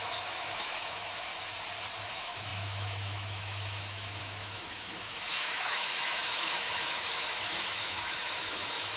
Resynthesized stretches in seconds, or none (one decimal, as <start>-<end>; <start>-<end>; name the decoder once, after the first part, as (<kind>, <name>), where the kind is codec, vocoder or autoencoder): 0.0-1.3 (autoencoder, DAC-VAE); 2.1-9.0